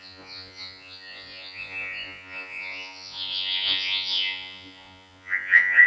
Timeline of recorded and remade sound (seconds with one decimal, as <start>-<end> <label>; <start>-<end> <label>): 0.0-5.9 remade